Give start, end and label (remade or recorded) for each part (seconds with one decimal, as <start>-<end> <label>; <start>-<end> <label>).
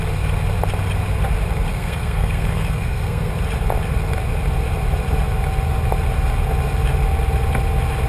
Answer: 0.0-1.7 recorded; 1.7-3.3 remade; 3.3-8.1 recorded